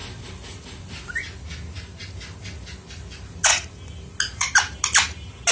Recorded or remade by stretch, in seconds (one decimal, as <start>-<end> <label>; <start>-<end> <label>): 0.0-5.5 recorded

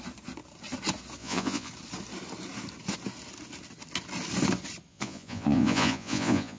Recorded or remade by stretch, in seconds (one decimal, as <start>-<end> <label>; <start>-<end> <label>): 0.0-1.2 recorded; 1.2-1.7 remade; 1.7-4.9 recorded; 4.9-6.6 remade

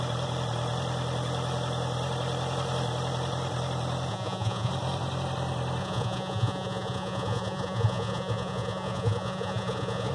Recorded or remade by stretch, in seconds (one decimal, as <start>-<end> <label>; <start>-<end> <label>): 0.0-4.1 recorded; 4.1-4.7 remade; 4.7-5.8 recorded; 5.8-10.1 remade

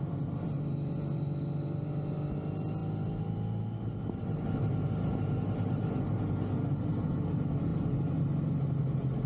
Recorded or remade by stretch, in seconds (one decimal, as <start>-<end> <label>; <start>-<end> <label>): 0.0-9.3 recorded

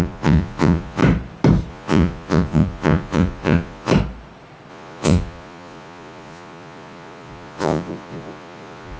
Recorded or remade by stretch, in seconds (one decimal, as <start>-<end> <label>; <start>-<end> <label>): 0.0-1.0 remade; 1.0-1.7 recorded; 1.7-3.9 remade; 3.9-4.7 recorded; 4.7-9.0 remade

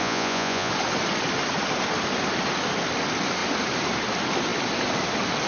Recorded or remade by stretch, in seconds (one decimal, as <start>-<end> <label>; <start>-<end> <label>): 0.0-0.7 remade; 0.7-5.5 recorded

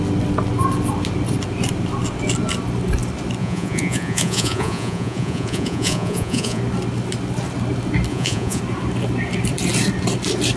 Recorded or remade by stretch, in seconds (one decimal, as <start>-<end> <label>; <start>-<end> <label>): 0.0-3.4 recorded; 3.4-6.6 remade; 6.6-8.1 recorded; 8.1-8.6 remade; 8.6-10.6 recorded